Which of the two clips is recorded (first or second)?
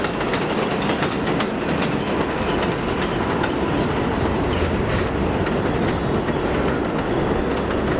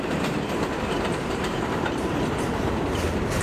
first